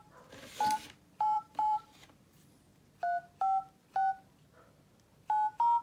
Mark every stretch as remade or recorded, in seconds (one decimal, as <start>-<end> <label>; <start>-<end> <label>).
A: 0.0-2.7 remade; 2.7-5.8 recorded